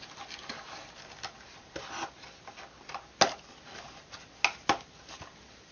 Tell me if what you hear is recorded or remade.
recorded